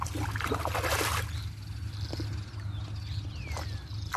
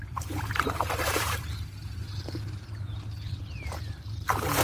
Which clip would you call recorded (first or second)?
first